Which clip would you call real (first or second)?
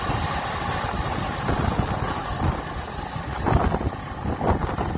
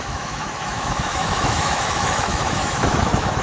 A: first